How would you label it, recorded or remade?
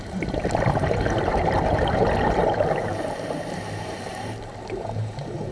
remade